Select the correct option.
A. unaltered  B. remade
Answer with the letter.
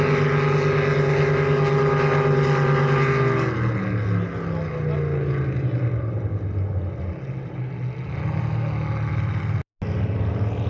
A